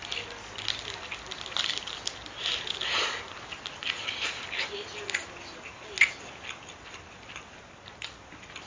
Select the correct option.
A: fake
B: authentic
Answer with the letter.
B